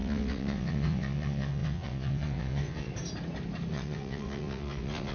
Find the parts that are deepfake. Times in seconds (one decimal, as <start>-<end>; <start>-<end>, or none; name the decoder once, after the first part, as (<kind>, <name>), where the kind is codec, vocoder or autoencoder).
0.0-2.9 (vocoder, WaveNeXt); 3.7-5.1